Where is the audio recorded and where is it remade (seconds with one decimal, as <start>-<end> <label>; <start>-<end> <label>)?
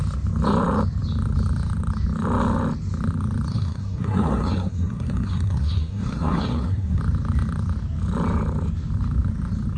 0.0-3.5 recorded; 3.5-7.0 remade; 7.0-9.8 recorded